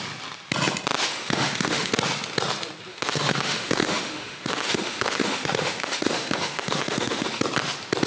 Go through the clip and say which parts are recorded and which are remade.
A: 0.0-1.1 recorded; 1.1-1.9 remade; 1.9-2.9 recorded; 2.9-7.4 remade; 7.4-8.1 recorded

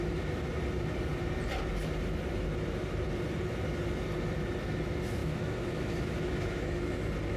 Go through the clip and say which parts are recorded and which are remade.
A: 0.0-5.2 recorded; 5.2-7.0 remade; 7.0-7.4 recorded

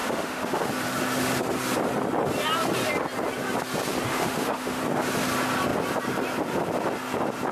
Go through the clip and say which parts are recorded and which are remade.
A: 0.0-0.7 remade; 0.7-4.1 recorded; 4.1-4.8 remade; 4.8-7.5 recorded

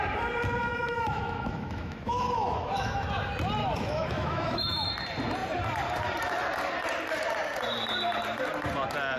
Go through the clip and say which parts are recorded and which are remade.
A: 0.0-0.6 recorded; 0.6-3.1 remade; 3.1-3.6 recorded; 3.6-4.9 remade; 4.9-9.2 recorded

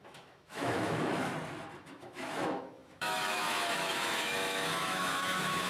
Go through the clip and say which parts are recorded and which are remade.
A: 0.0-1.3 remade; 1.3-1.8 recorded; 1.8-5.7 remade

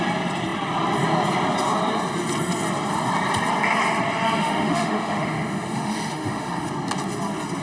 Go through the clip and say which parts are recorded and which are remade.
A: 0.0-4.4 recorded; 4.4-6.7 remade; 6.7-7.6 recorded